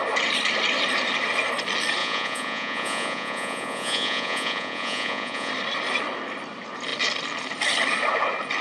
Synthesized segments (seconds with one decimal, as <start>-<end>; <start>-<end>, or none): 2.0-5.5